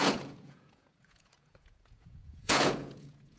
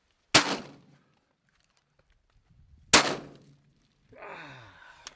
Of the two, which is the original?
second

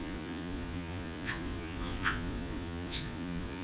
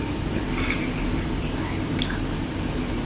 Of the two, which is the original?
second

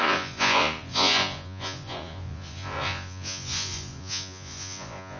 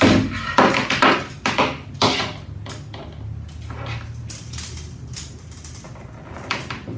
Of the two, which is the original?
second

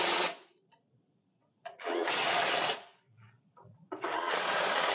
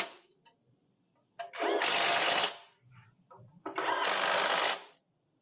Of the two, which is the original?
second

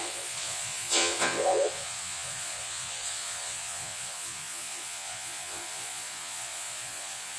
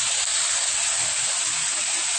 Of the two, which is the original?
second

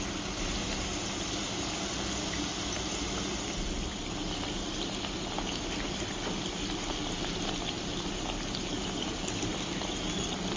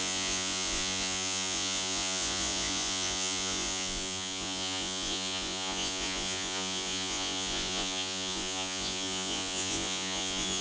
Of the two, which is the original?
first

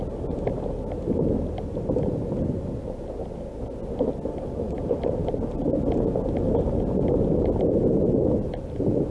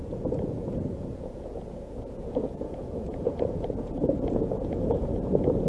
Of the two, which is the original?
first